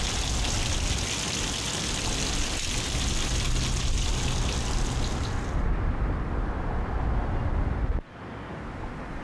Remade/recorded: recorded